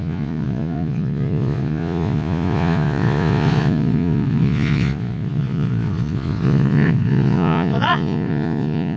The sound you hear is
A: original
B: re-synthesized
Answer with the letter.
B